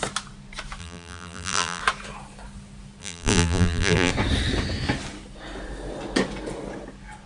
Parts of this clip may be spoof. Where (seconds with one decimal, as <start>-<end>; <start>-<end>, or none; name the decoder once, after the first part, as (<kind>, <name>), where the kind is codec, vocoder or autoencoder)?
0.8-1.8 (vocoder, BigVGAN v2); 3.0-4.1